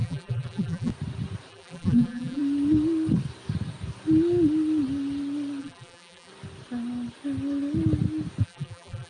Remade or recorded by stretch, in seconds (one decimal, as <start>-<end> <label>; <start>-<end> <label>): 0.0-0.9 remade; 0.9-1.5 recorded; 1.5-2.4 remade; 2.4-5.6 recorded; 5.6-6.3 remade; 6.3-8.4 recorded; 8.4-9.1 remade